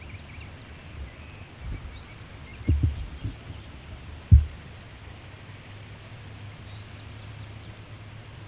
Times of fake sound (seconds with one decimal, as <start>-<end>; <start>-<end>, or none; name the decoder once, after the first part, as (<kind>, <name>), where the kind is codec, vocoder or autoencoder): none